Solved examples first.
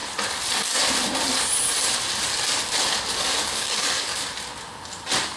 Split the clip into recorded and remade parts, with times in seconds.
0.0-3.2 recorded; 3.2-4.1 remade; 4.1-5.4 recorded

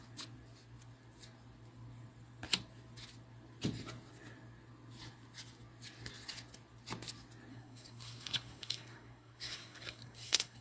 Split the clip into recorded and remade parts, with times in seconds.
0.0-7.5 recorded; 7.5-10.6 remade

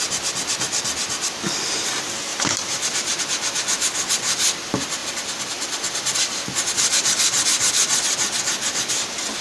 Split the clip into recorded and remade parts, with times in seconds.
0.0-2.3 recorded; 2.3-3.2 remade; 3.2-9.4 recorded

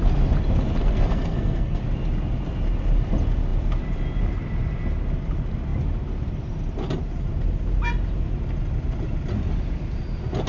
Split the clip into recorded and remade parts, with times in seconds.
0.0-0.8 recorded; 0.8-1.8 remade; 1.8-10.5 recorded

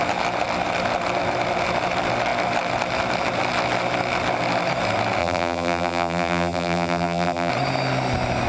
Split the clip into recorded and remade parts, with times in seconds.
0.0-5.2 recorded; 5.2-7.5 remade; 7.5-8.5 recorded

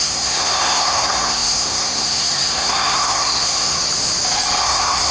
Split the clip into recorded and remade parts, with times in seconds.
0.0-3.8 remade; 3.8-4.6 recorded; 4.6-5.1 remade